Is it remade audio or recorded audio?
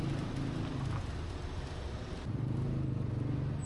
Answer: recorded